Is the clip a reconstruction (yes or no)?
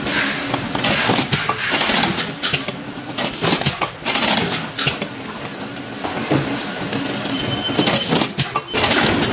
no